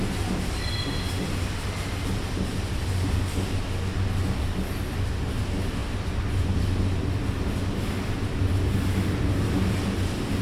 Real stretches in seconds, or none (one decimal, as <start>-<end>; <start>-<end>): 0.0-10.4